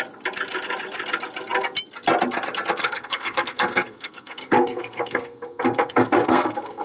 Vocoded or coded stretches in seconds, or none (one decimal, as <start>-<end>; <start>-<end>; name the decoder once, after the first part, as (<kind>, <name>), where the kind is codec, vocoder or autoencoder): 2.8-6.8 (codec, SNAC)